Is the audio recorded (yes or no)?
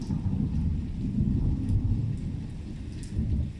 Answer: yes